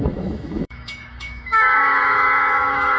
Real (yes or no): no